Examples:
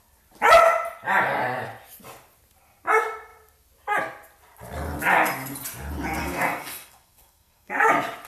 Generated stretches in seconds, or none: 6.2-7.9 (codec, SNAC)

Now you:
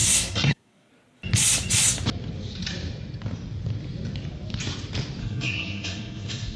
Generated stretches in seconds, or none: 0.0-0.9 (codec, SNAC); 5.2-6.6

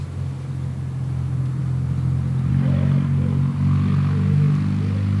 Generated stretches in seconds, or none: none

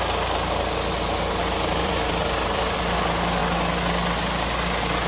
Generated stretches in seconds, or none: 1.8-2.8 (vocoder, BigVGAN v2)

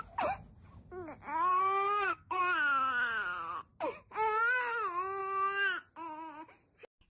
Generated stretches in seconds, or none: 1.5-2.4 (codec, SNAC)

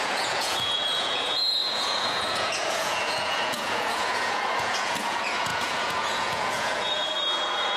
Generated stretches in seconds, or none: 0.0-7.8 (vocoder, Vocos)